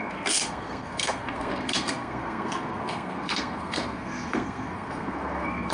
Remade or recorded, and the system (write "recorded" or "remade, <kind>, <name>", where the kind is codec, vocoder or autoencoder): remade, codec, SNAC